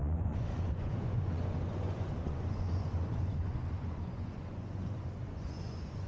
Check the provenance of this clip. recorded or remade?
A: remade